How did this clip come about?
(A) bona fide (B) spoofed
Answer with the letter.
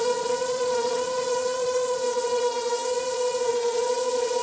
B